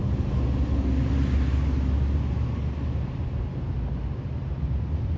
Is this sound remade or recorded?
recorded